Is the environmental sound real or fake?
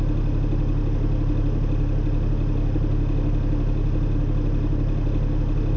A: real